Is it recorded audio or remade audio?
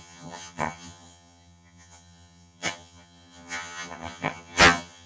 remade